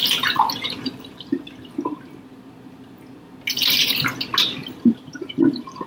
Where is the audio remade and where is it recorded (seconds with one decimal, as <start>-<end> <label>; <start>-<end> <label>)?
0.0-1.3 remade; 1.3-4.4 recorded; 4.4-5.9 remade